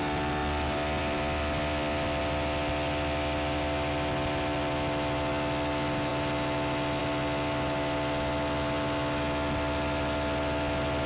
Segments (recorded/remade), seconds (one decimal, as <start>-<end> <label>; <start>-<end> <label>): 0.0-11.1 recorded